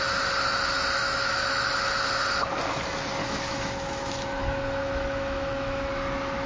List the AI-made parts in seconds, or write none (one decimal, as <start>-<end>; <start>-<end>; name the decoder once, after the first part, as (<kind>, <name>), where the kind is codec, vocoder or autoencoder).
1.0-1.7 (autoencoder, DAC-VAE); 3.2-5.9

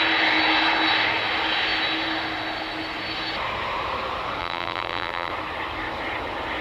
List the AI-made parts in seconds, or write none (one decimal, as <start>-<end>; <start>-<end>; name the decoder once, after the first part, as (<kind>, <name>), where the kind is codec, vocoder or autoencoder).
4.4-5.3 (vocoder, BigVGAN v2)

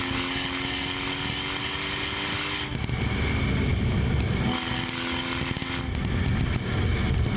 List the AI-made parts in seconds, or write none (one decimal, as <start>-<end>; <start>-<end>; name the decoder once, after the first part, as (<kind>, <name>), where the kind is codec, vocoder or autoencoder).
none

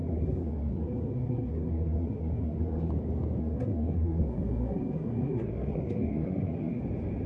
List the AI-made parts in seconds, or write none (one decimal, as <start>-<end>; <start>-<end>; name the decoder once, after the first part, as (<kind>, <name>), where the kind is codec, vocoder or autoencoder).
0.0-2.9 (codec, SNAC); 3.4-6.8